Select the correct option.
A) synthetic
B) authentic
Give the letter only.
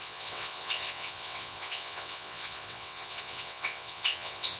A